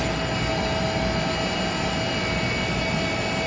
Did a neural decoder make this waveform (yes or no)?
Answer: no